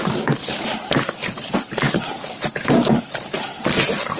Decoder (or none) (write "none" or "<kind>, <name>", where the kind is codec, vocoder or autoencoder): none